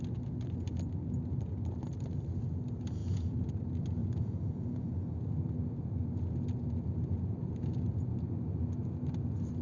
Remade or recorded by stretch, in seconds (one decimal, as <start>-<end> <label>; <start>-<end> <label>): 0.0-3.0 recorded; 3.0-3.5 remade; 3.5-4.0 recorded; 4.0-4.9 remade; 4.9-9.6 recorded